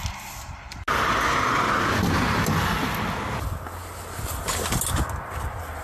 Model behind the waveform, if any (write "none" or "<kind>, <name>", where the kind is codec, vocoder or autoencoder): none